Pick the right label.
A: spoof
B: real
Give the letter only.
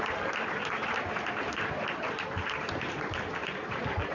A